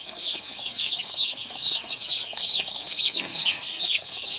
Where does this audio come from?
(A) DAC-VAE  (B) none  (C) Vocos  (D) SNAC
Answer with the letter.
D